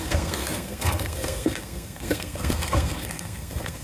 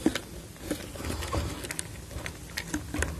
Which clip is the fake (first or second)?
first